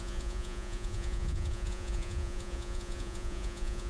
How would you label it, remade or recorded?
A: remade